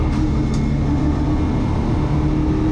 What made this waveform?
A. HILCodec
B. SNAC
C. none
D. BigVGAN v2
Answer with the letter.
C